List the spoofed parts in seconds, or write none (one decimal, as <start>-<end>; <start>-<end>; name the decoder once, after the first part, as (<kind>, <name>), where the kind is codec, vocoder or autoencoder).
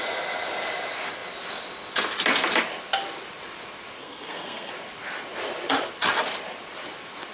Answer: 4.0-4.7 (codec, SNAC)